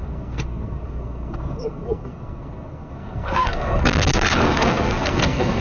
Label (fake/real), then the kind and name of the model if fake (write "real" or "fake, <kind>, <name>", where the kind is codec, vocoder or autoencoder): fake, codec, SNAC